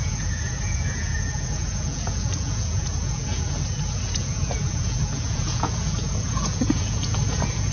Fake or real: fake